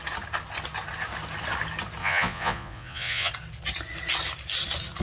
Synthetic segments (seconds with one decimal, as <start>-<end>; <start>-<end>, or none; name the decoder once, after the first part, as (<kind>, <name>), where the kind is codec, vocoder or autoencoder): 2.0-3.3 (vocoder, Vocos)